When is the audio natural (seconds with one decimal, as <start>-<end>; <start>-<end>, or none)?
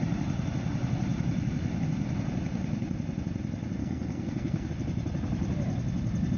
0.0-3.8; 4.7-6.4